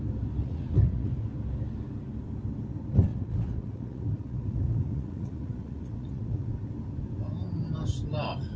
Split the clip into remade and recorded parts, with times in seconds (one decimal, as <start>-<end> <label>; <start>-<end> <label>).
0.0-0.4 recorded; 0.4-1.1 remade; 1.1-3.1 recorded; 3.1-6.5 remade; 6.5-8.6 recorded

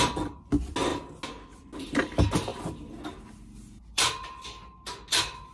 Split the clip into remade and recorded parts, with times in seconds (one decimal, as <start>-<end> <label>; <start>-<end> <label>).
0.0-5.5 recorded

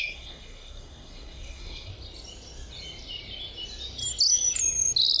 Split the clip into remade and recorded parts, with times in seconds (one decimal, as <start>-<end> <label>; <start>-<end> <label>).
0.0-1.9 remade; 1.9-5.2 recorded

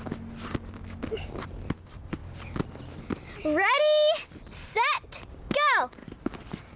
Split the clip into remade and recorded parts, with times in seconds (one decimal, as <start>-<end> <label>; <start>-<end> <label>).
0.0-6.0 recorded; 6.0-6.8 remade